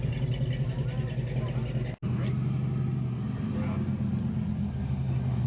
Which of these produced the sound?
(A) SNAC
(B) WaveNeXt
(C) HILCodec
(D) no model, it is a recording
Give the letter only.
D